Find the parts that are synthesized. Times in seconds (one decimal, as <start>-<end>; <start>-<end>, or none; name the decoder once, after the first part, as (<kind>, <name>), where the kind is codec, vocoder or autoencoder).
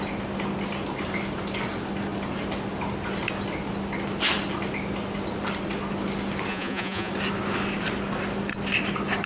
6.5-7.1 (vocoder, Vocos)